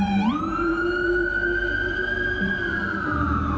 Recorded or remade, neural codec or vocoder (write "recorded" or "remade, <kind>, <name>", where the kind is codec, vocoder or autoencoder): remade, vocoder, BigVGAN v2